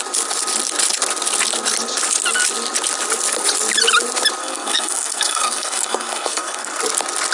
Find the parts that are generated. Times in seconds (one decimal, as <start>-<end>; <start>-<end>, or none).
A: 4.4-6.8